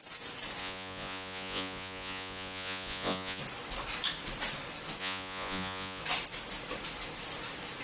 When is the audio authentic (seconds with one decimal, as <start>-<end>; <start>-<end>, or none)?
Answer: 0.0-0.6; 3.4-5.0; 6.0-7.8